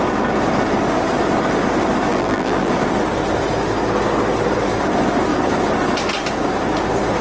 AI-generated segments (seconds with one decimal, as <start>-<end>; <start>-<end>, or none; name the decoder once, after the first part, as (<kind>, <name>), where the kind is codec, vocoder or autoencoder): 2.1-2.7 (vocoder, BigVGAN v2)

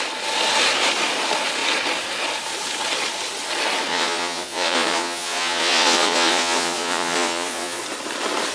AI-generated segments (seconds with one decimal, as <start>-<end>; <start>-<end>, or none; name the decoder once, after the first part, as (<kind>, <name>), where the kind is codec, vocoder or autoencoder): 3.9-7.8 (vocoder, Vocos)

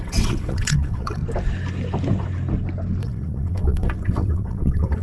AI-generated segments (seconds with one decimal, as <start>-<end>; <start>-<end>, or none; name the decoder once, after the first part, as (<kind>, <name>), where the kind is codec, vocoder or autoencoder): 0.0-1.2 (vocoder, WaveNeXt); 3.0-5.0

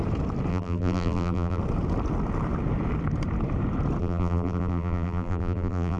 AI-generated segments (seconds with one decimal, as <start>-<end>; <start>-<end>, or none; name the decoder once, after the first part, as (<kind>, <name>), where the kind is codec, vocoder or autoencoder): 0.5-1.6 (vocoder, BigVGAN v2); 4.0-6.0

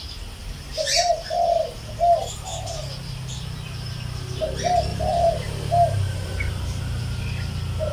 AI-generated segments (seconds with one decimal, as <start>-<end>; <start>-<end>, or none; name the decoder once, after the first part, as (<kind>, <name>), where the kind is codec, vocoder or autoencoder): 0.4-1.4 (vocoder, BigVGAN v2); 4.9-6.5

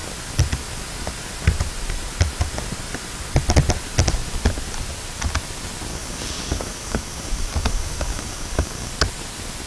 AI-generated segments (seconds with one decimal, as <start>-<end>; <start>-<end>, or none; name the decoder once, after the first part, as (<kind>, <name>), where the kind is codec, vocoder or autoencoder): 5.9-8.9 (codec, DAC)

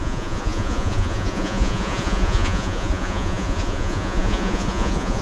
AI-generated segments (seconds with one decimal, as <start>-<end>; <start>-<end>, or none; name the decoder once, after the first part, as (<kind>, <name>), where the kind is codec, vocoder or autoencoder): 0.0-5.2 (vocoder, Vocos)

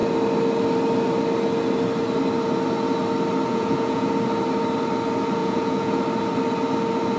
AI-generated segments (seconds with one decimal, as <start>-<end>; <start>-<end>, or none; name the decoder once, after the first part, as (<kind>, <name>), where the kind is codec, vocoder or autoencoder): 3.5-4.1 (vocoder, Vocos); 5.4-6.0